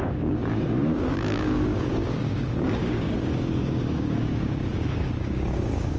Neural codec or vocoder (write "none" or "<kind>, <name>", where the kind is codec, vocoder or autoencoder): codec, DAC